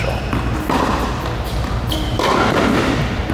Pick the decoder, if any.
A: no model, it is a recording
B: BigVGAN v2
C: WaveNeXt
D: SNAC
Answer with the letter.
A